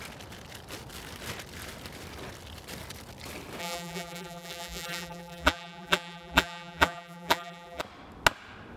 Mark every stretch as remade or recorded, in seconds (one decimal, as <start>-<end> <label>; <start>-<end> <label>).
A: 0.0-3.6 recorded; 3.6-7.8 remade; 7.8-8.8 recorded